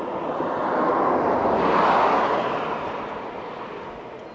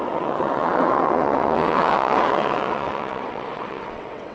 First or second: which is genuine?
first